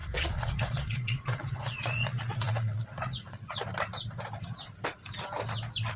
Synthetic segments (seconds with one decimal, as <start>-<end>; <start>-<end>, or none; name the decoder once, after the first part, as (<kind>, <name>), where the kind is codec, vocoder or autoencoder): 0.0-3.6 (vocoder, Vocos)